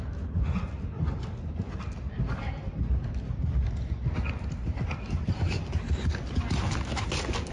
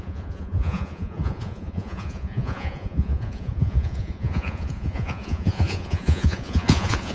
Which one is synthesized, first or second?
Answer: second